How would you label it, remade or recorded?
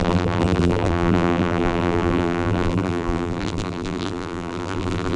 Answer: remade